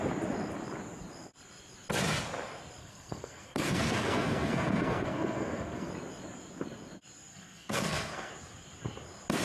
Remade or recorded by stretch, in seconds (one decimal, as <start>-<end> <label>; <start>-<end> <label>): 0.0-2.8 recorded; 2.8-5.9 remade; 5.9-7.3 recorded; 7.3-8.3 remade; 8.3-9.4 recorded